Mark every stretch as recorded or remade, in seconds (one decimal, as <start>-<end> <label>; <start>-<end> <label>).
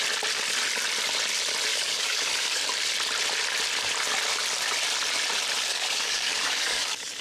0.0-1.7 recorded; 1.7-2.6 remade; 2.6-5.7 recorded; 5.7-7.2 remade